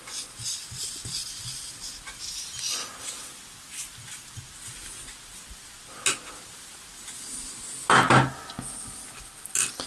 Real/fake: real